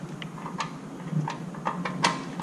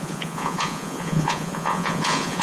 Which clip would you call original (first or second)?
first